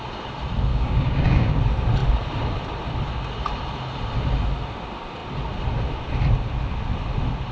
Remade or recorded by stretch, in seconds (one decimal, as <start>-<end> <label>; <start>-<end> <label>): 0.0-0.7 recorded; 0.7-1.6 remade; 1.6-7.5 recorded